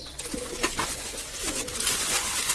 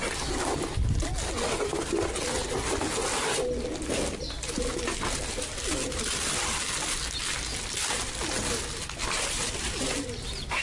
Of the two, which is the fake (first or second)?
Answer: first